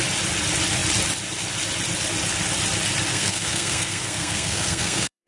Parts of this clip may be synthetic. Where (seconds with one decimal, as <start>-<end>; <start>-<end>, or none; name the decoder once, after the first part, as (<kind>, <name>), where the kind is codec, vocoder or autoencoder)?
3.1-5.3 (codec, SNAC)